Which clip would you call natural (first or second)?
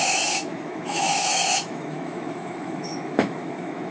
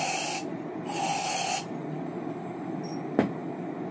second